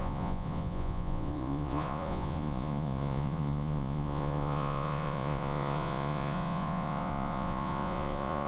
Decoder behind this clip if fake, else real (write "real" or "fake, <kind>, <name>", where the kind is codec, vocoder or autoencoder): fake, vocoder, Vocos